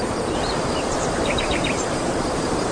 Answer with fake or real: fake